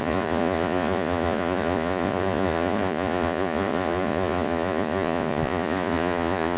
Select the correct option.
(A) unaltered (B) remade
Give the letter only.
B